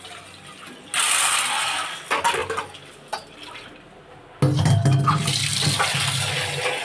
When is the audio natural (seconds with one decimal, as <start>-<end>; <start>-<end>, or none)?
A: 0.0-6.8